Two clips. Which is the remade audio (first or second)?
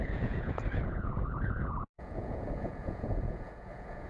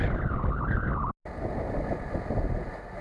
first